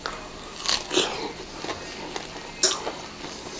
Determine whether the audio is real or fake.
real